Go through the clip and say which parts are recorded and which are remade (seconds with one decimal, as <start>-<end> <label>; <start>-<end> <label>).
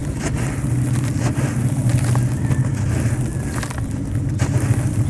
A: 0.0-1.2 recorded; 1.2-1.9 remade; 1.9-5.1 recorded